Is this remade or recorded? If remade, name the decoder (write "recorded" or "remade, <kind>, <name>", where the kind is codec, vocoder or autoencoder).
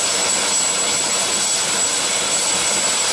recorded